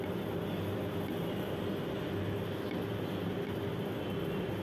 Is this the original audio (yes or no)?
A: yes